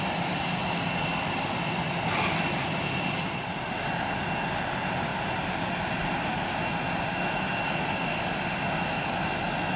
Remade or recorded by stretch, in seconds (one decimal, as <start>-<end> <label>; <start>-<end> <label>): 0.0-1.1 recorded; 1.1-4.2 remade; 4.2-5.1 recorded; 5.1-6.3 remade; 6.3-9.8 recorded